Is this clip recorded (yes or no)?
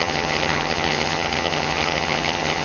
no